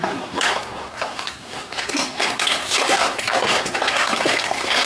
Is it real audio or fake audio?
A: fake